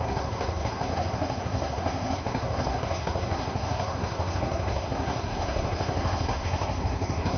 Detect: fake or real fake